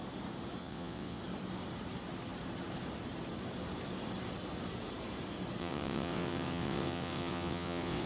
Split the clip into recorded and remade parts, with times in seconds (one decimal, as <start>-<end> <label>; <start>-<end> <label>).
0.0-0.6 recorded; 0.6-1.2 remade; 1.2-5.6 recorded; 5.6-8.1 remade